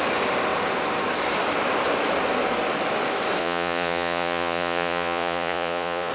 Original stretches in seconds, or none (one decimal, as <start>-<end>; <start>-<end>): 0.0-3.4